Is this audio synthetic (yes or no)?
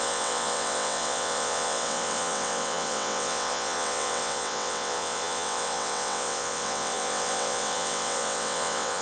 yes